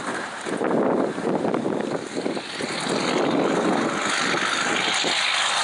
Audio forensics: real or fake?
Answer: real